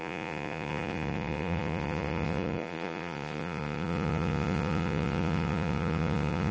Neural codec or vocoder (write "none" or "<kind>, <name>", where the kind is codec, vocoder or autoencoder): vocoder, Vocos